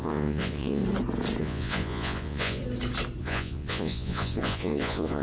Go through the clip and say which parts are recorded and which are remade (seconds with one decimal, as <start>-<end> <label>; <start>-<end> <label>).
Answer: 0.0-0.8 remade; 0.8-1.4 recorded; 1.4-2.6 remade; 2.6-3.2 recorded; 3.2-5.2 remade